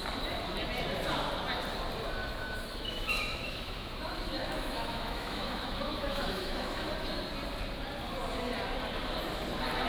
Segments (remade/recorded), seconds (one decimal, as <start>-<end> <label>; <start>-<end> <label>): 0.0-2.2 recorded; 2.2-4.0 remade; 4.0-4.4 recorded; 4.4-6.9 remade; 6.9-9.9 recorded